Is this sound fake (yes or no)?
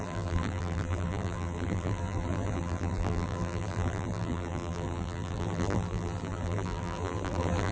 yes